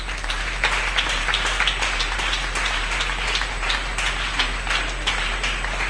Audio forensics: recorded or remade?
remade